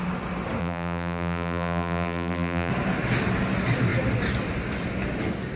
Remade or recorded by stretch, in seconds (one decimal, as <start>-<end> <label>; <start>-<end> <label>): 0.0-0.6 recorded; 0.6-2.7 remade; 2.7-5.6 recorded